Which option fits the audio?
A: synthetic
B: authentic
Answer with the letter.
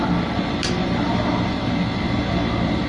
B